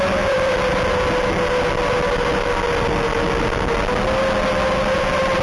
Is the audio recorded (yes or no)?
yes